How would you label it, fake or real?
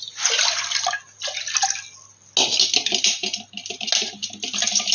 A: real